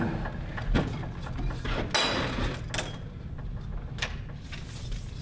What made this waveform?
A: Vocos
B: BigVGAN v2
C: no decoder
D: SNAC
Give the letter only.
C